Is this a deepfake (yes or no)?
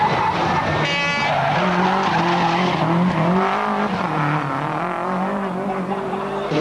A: no